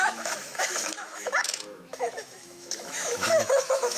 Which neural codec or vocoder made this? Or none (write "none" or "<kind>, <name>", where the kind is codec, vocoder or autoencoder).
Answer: autoencoder, DAC-VAE